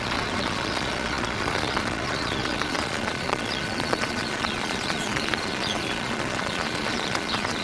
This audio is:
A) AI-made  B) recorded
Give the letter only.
A